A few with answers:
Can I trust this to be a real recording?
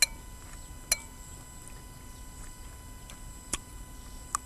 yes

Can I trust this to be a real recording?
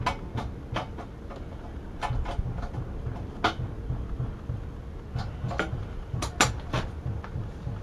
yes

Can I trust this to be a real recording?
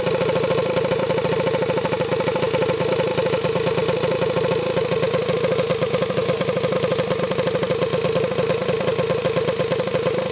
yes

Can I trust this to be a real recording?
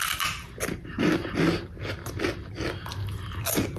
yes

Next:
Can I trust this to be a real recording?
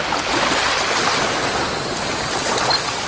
yes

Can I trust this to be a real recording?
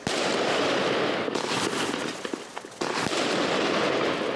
yes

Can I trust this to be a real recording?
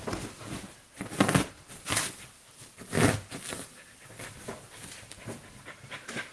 yes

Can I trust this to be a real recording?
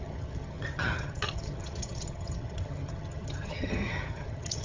no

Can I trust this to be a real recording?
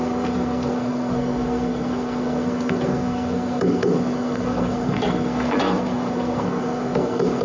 no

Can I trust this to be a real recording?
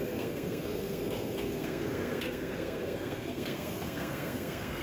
no